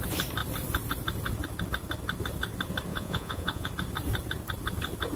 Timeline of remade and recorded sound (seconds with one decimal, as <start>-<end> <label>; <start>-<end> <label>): 0.0-2.9 recorded; 2.9-3.7 remade; 3.7-5.2 recorded